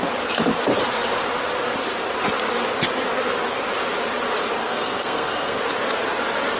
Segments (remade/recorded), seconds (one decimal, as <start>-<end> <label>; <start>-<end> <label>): 0.0-4.6 recorded; 4.6-5.6 remade; 5.6-6.6 recorded